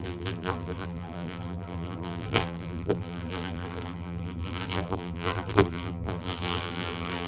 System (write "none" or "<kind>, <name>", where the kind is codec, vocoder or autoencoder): vocoder, BigVGAN v2